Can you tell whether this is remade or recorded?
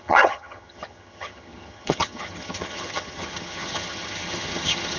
remade